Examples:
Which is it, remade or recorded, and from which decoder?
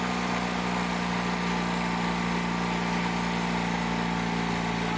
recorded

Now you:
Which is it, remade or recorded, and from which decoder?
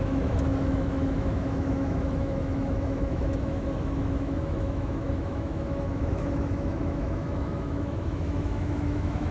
remade, autoencoder, DAC-VAE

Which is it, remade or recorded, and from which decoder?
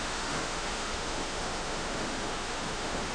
remade, autoencoder, DAC-VAE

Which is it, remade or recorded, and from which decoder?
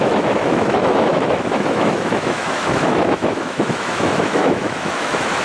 remade, autoencoder, DAC-VAE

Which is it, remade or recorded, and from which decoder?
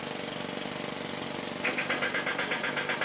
recorded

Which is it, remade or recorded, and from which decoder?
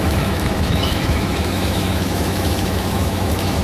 remade, autoencoder, DAC-VAE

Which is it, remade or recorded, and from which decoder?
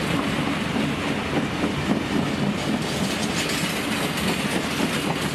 recorded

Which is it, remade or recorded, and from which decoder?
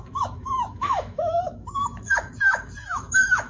remade, autoencoder, DAC-VAE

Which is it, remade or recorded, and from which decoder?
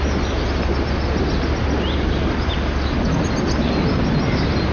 recorded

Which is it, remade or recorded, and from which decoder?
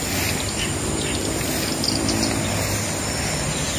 recorded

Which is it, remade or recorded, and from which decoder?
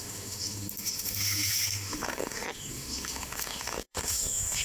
remade, autoencoder, DAC-VAE